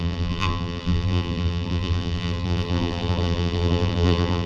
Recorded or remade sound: remade